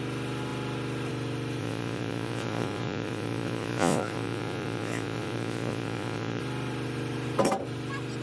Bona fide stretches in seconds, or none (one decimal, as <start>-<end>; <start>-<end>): 0.0-1.6; 6.4-8.2

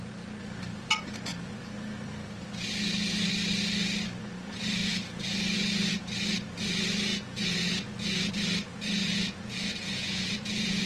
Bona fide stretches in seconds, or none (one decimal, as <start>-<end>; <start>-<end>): 0.0-4.8; 5.8-7.1; 8.3-9.0